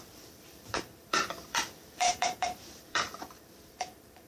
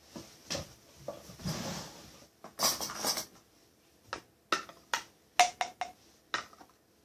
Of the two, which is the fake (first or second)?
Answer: first